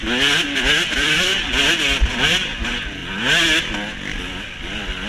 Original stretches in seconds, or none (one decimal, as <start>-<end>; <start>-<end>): 0.0-5.1

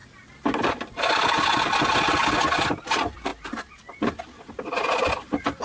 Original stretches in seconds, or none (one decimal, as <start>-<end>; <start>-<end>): 0.0-5.6

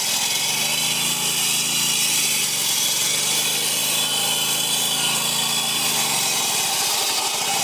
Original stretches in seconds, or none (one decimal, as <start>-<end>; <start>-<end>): 0.0-7.6

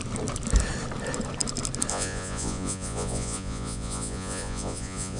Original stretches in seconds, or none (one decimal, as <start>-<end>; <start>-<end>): 0.0-1.9